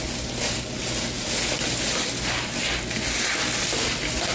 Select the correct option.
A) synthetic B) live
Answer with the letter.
B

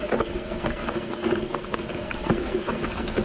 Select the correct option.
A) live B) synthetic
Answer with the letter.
B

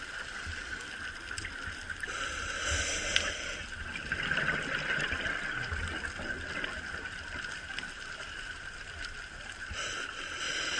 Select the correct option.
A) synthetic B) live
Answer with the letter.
B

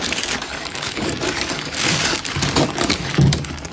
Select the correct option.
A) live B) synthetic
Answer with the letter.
B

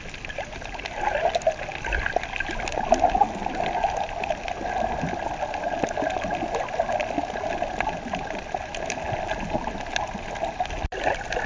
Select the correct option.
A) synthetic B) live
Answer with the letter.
B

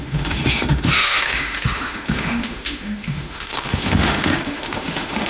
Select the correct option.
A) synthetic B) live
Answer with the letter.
A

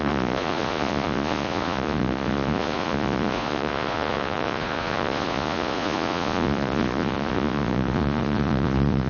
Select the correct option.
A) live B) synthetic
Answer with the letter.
B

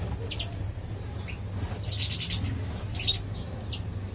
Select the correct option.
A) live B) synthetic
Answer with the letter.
A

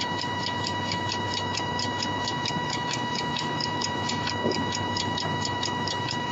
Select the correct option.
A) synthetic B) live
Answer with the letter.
A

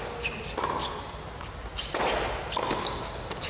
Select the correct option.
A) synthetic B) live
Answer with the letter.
B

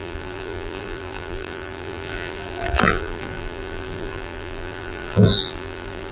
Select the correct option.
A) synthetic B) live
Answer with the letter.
A